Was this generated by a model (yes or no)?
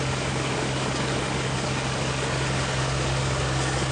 yes